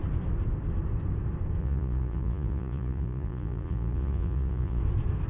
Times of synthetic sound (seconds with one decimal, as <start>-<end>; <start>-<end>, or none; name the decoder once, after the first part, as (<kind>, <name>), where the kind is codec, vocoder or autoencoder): 1.6-4.8 (vocoder, Vocos)